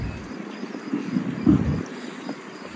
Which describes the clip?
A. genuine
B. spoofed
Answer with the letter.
A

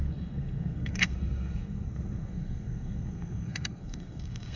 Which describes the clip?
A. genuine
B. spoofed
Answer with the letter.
B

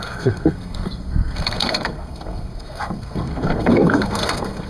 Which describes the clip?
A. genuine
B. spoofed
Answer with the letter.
B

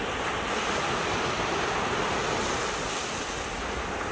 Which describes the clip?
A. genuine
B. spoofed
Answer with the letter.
A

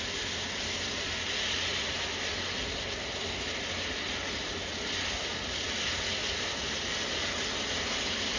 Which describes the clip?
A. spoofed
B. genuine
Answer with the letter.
B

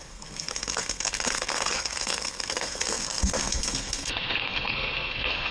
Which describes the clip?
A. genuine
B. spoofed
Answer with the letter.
B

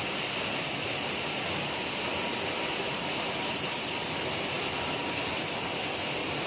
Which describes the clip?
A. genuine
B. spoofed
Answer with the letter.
A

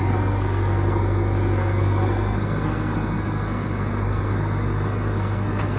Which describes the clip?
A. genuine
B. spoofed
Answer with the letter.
B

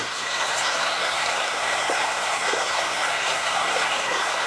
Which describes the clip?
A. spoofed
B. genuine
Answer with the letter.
A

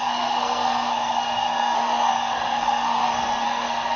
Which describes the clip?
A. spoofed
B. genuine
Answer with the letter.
A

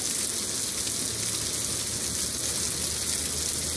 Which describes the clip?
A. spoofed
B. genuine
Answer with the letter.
B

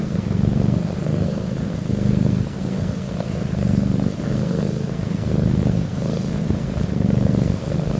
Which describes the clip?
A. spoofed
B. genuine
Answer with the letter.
A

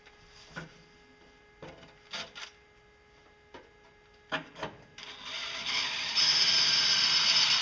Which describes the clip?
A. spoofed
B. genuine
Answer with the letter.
B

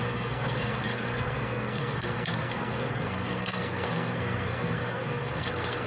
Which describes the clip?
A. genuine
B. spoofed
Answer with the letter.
B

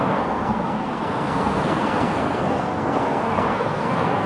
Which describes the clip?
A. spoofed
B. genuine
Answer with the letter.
A